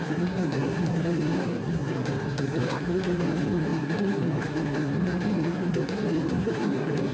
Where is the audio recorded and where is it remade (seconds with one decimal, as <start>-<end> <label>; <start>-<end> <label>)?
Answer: 0.0-7.1 remade